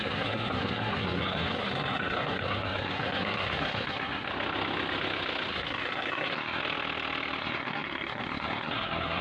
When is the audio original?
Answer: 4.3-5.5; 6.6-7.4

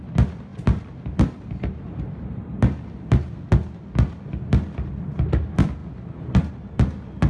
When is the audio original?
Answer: 0.0-7.3

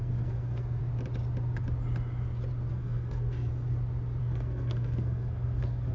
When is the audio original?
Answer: 0.8-2.7; 3.5-4.2

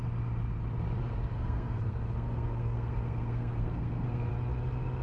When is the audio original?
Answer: 0.0-1.3; 4.3-5.0